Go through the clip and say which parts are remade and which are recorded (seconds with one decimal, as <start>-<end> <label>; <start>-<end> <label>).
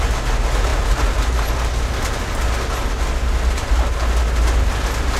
0.0-5.2 recorded